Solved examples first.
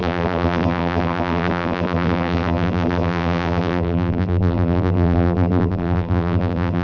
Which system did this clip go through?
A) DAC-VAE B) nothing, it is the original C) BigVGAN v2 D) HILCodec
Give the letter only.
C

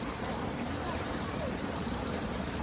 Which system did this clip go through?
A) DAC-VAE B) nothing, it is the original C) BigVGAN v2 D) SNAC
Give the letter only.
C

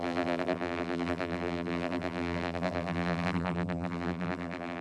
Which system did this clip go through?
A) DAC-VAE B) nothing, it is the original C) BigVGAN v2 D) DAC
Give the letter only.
C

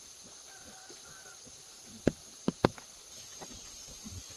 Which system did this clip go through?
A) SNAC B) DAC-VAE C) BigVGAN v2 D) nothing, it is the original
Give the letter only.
D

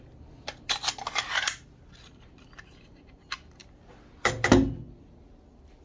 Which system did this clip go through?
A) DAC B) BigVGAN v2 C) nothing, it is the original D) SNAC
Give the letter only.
C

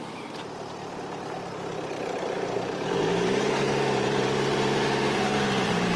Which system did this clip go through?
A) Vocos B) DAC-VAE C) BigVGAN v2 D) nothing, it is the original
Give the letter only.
C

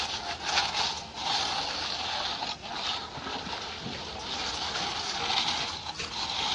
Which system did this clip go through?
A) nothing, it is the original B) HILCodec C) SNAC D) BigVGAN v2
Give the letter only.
A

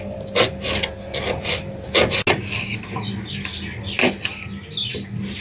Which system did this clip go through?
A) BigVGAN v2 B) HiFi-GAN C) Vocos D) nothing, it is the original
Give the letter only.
D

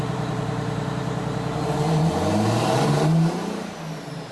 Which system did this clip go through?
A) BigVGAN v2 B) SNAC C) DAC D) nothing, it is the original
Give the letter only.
A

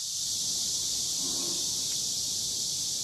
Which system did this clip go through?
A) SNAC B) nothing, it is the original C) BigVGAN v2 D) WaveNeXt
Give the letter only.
C